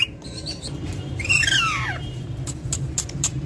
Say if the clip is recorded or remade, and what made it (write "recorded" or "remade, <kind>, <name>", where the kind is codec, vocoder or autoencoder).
remade, vocoder, BigVGAN v2